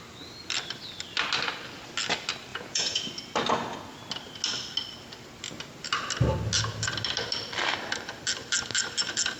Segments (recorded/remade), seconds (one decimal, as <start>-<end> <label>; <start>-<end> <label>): 0.0-2.5 recorded; 2.5-3.0 remade; 3.0-9.4 recorded